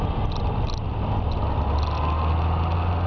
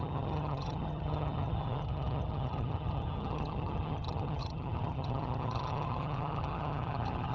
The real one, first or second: first